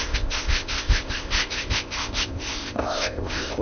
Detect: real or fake fake